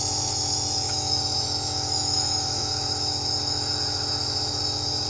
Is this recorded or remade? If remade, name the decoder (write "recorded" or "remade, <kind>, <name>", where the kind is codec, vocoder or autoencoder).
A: remade, autoencoder, DAC-VAE